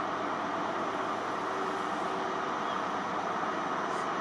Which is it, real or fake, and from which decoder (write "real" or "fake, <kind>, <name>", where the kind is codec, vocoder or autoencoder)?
real